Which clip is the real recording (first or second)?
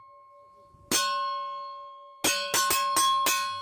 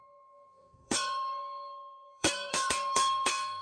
first